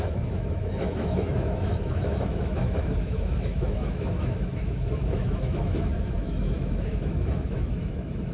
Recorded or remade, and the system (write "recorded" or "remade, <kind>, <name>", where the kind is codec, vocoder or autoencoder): remade, autoencoder, DAC-VAE